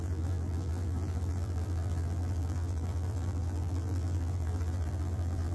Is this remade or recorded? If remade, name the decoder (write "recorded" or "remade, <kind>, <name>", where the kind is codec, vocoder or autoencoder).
remade, vocoder, BigVGAN v2